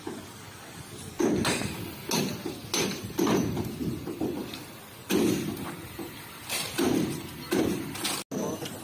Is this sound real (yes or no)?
yes